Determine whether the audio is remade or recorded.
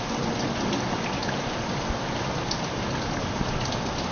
recorded